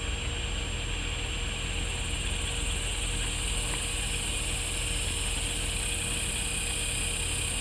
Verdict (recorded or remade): recorded